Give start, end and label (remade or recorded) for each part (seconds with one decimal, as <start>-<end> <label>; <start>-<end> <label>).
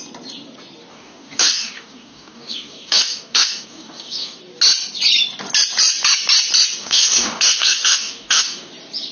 0.0-0.9 recorded; 0.9-4.4 remade; 4.4-6.8 recorded; 6.8-8.7 remade; 8.7-9.1 recorded